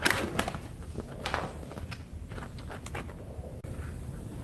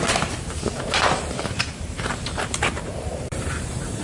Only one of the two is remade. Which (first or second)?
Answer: second